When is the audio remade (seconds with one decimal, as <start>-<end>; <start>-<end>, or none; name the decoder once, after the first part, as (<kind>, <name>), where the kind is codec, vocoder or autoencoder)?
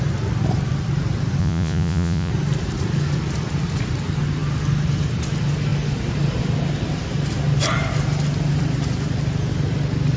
1.4-2.3 (vocoder, Vocos)